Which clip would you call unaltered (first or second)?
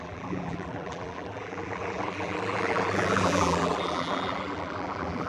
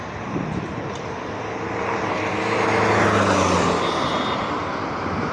second